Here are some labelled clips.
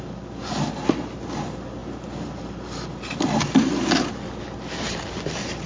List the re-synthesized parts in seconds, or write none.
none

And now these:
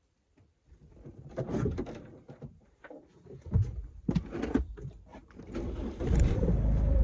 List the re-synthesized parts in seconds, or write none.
0.0-3.1 (vocoder, BigVGAN v2); 4.4-7.0